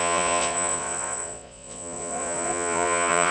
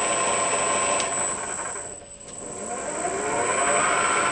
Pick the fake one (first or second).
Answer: first